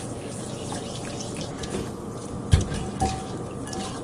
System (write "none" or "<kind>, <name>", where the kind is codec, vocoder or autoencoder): none